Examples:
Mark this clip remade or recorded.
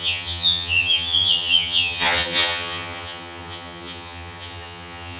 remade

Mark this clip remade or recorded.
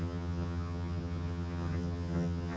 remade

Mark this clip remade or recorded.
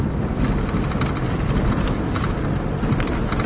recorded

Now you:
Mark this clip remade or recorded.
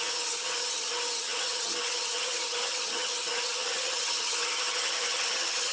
remade